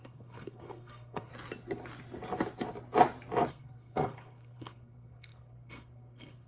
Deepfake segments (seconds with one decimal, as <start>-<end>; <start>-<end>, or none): 0.0-1.3; 3.5-6.5